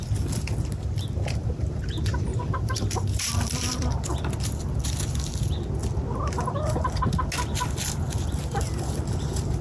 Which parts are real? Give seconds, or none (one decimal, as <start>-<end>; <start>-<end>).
0.0-1.4; 3.3-9.6